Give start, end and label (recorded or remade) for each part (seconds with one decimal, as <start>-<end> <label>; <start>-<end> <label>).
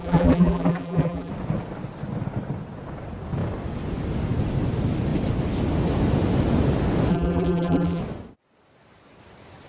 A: 0.0-1.3 remade; 1.3-7.1 recorded; 7.1-8.0 remade; 8.0-9.7 recorded